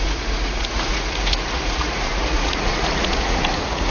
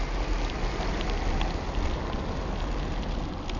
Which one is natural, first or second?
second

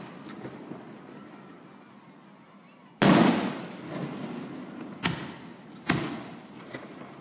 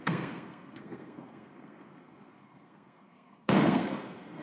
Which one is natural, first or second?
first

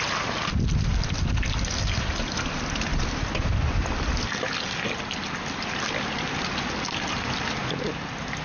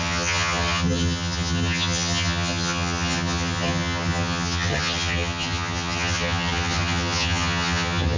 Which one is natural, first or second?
first